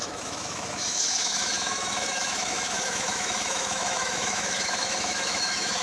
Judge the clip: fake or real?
fake